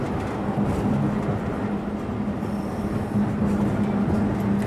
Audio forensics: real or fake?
real